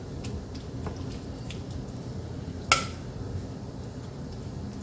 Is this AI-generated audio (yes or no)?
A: no